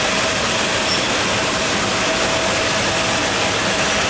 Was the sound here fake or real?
real